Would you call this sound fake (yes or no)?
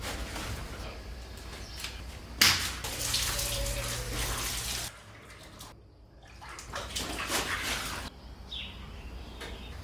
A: no